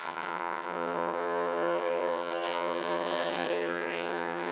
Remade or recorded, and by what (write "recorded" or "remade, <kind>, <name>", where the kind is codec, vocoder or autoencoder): remade, vocoder, HiFi-GAN